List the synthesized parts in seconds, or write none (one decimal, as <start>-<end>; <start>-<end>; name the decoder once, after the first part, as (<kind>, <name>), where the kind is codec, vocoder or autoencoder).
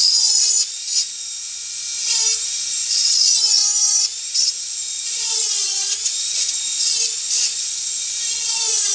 0.0-1.9 (vocoder, Vocos); 2.7-3.6; 4.6-8.9